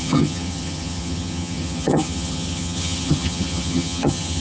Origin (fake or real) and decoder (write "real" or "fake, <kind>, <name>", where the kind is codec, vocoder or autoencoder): fake, vocoder, HiFi-GAN